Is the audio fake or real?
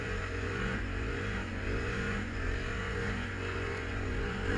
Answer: fake